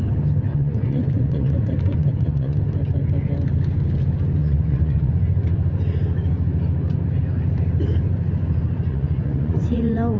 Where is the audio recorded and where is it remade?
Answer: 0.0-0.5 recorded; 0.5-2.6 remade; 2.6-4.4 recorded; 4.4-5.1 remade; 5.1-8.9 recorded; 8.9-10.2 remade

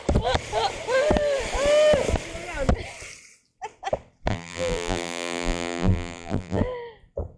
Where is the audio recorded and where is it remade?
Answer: 0.0-4.3 recorded; 4.3-6.6 remade; 6.6-7.4 recorded